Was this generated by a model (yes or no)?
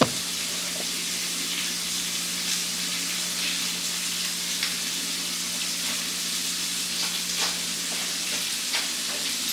no